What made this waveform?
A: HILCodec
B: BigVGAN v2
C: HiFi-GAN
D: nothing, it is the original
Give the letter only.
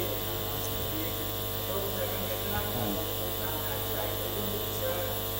D